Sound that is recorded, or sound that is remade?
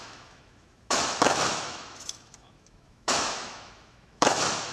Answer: remade